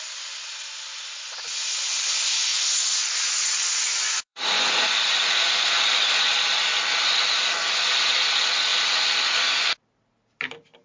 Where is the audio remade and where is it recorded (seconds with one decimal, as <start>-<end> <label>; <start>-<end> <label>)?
0.0-2.5 recorded; 2.5-6.1 remade; 6.1-10.8 recorded